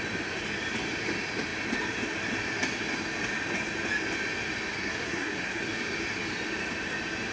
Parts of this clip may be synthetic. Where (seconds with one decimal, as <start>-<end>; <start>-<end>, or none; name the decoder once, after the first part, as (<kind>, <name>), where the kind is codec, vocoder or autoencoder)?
4.7-5.6 (codec, SNAC)